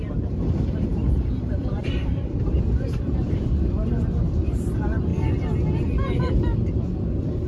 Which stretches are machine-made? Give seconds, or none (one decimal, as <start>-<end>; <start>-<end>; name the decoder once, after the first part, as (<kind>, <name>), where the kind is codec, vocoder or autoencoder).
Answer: 0.0-5.1 (vocoder, BigVGAN v2); 5.8-6.5